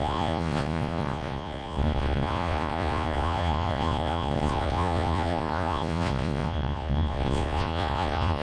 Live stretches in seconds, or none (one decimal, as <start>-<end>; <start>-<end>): none